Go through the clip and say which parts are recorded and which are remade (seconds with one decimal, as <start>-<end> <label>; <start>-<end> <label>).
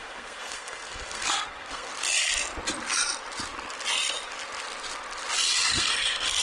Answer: 0.0-1.9 remade; 1.9-5.7 recorded; 5.7-6.4 remade